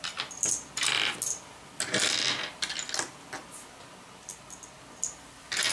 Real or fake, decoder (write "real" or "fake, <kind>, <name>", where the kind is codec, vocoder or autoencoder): real